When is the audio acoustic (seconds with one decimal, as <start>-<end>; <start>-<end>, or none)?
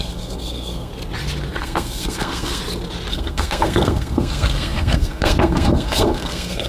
0.9-1.6; 2.6-3.1